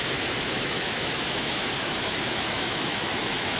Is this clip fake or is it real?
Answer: fake